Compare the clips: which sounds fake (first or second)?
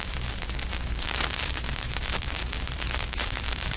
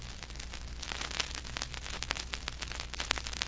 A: first